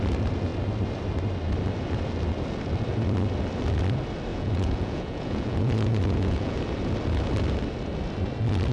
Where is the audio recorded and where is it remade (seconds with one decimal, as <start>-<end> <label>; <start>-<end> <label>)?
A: 0.0-4.3 recorded; 4.3-6.6 remade; 6.6-8.7 recorded